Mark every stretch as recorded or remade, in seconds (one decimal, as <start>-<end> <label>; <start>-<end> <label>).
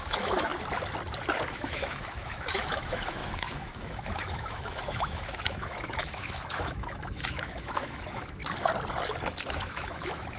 0.0-0.5 remade; 0.5-1.5 recorded; 1.5-8.4 remade; 8.4-9.5 recorded; 9.5-10.4 remade